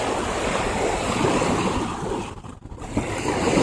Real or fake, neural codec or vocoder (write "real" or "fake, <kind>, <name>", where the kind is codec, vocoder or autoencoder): real